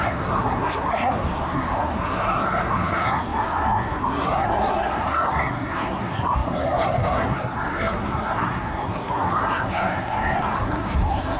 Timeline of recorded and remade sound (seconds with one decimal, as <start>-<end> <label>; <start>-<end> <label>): 0.0-11.4 remade